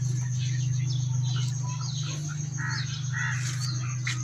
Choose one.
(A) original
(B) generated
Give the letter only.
A